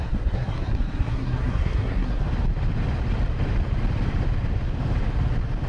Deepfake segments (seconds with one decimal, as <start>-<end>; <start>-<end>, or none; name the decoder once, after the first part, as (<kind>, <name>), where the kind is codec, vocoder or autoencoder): 0.0-2.2 (codec, SNAC)